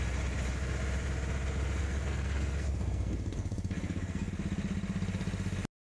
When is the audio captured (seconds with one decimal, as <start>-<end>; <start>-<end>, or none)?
0.0-1.8; 4.3-5.9